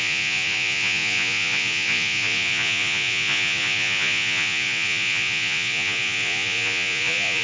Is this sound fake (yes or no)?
yes